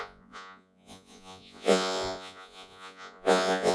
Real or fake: fake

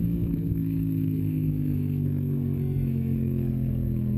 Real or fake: fake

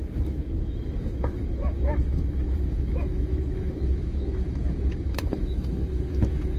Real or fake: fake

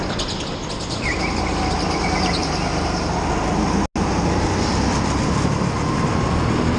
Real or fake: real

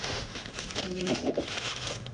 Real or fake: fake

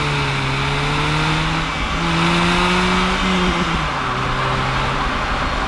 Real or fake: real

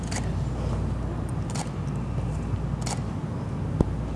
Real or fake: real